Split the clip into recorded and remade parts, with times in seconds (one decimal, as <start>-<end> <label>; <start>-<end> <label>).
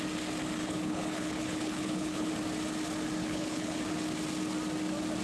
0.0-0.6 recorded; 0.6-2.3 remade; 2.3-3.2 recorded; 3.2-3.8 remade; 3.8-5.2 recorded